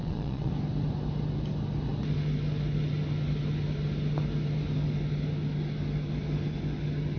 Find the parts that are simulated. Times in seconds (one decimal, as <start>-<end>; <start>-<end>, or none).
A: 0.0-0.5